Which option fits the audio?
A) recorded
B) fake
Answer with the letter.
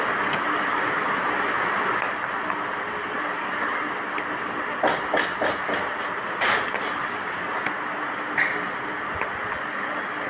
A